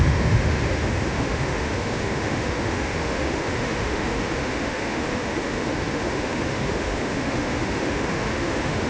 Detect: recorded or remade remade